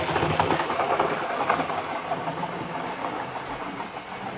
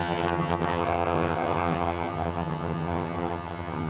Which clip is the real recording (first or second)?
first